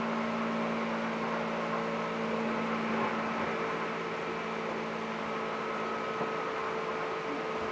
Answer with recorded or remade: recorded